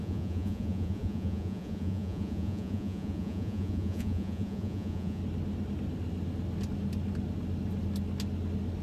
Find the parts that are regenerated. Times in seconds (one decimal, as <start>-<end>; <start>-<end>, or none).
0.0-5.2